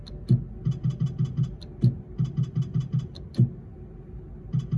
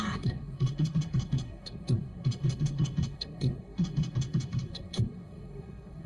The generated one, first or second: second